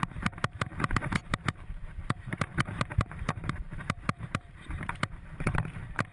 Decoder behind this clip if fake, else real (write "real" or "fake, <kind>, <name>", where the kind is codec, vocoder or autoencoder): fake, vocoder, BigVGAN v2